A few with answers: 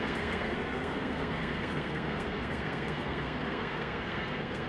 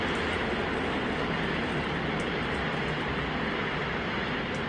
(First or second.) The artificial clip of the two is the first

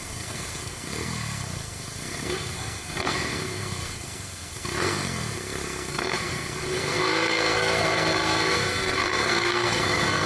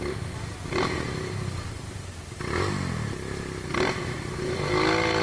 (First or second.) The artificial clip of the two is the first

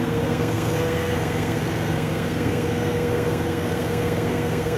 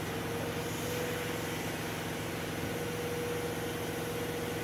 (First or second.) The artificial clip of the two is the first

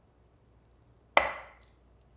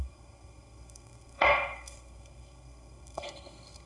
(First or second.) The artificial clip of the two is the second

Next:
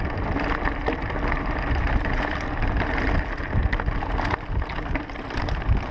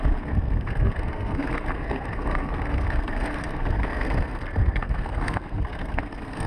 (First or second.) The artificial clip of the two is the second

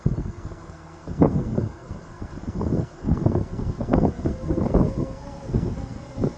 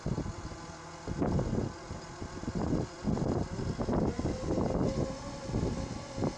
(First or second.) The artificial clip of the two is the first